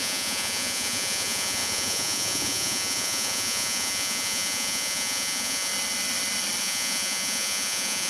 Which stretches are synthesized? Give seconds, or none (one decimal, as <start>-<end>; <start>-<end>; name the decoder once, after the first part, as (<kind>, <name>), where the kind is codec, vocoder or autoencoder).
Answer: 0.0-5.7 (vocoder, Vocos); 6.6-8.1